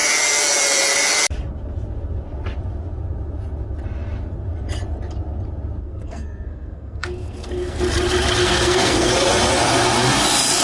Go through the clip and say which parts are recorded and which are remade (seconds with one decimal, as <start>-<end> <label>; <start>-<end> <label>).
0.0-5.8 recorded; 5.8-7.8 remade; 7.8-8.4 recorded; 8.4-9.1 remade; 9.1-10.6 recorded